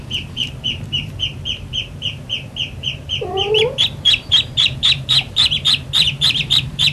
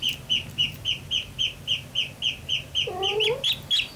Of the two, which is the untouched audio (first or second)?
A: second